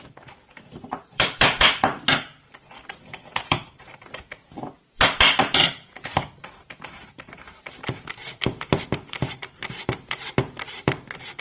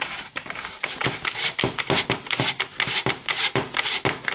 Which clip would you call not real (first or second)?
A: first